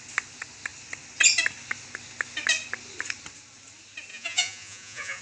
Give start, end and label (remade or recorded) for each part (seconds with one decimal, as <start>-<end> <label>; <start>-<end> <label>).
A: 0.0-4.1 recorded; 4.1-5.2 remade